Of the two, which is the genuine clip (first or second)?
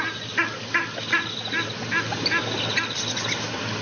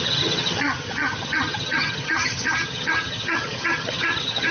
first